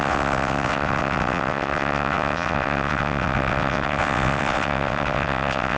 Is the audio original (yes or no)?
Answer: no